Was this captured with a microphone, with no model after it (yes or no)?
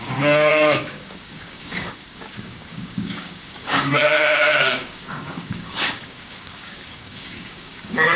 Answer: no